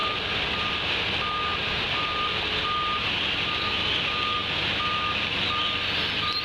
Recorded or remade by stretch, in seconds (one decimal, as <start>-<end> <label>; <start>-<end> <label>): 0.0-1.5 recorded; 1.5-2.5 remade; 2.5-6.4 recorded